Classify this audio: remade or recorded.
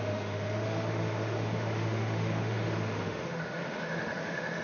remade